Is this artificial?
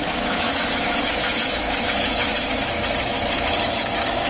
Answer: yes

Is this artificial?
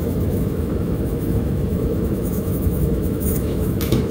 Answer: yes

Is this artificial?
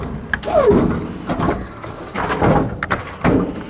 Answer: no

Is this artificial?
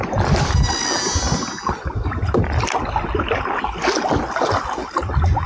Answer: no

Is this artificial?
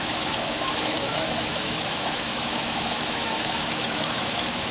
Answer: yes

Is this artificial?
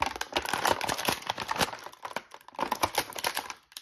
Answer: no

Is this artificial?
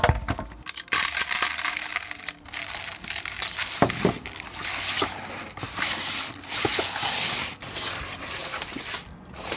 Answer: no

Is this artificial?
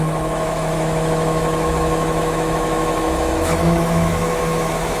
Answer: yes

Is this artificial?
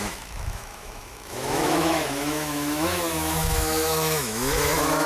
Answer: yes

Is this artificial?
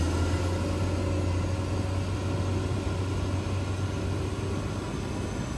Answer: no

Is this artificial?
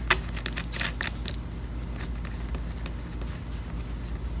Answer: no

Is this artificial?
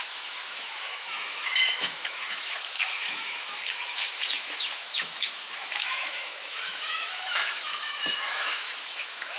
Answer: yes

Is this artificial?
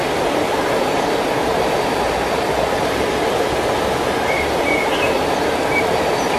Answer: no